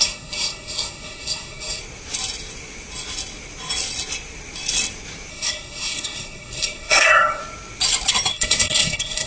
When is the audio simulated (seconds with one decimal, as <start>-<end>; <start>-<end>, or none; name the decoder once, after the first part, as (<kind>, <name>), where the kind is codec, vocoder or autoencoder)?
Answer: 0.0-1.8 (codec, SNAC); 5.3-7.4; 8.3-9.3